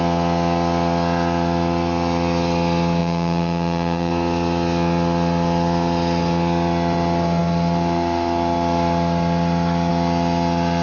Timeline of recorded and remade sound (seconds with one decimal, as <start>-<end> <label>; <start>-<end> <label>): 0.0-3.0 recorded; 3.0-4.1 remade; 4.1-10.8 recorded